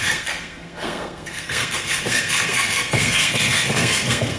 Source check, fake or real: fake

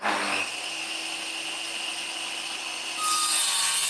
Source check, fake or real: real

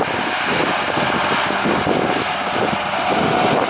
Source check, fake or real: real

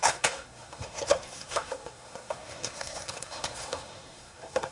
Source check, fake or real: fake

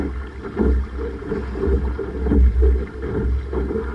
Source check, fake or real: real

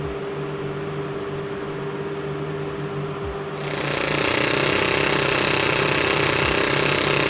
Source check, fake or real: real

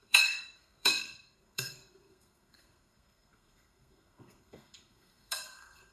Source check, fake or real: fake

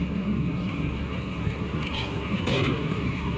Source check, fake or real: fake